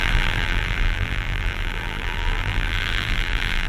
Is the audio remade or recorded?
remade